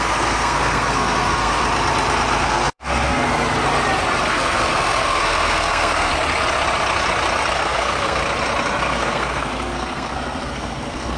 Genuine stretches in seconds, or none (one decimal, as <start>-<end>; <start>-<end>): 1.6-2.4; 3.3-4.3; 6.1-7.5; 8.2-8.8